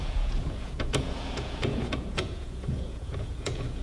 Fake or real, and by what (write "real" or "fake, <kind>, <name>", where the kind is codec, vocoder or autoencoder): fake, vocoder, Vocos